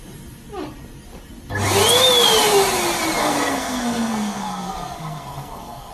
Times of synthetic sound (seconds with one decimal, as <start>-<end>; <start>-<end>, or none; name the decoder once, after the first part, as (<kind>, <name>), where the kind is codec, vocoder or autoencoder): 3.2-5.9 (codec, SNAC)